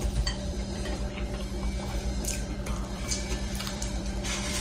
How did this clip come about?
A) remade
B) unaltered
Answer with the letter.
A